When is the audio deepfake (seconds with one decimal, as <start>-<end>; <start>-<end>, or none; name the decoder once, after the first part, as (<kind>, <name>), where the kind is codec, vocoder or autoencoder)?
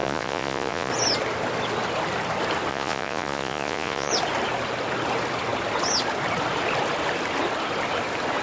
0.0-0.9 (vocoder, Vocos); 2.7-4.1